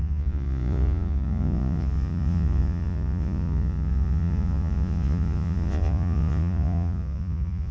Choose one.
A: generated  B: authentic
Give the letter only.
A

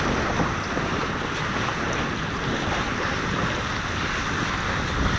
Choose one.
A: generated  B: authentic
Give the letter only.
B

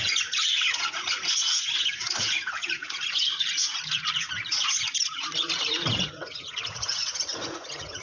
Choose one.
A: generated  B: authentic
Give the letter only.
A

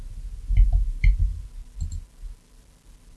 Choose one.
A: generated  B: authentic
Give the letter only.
B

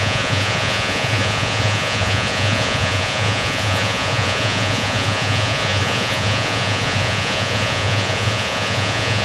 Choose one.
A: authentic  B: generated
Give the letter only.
B